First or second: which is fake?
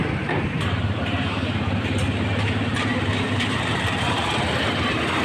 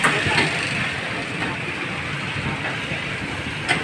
first